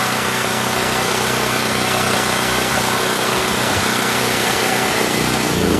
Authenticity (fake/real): fake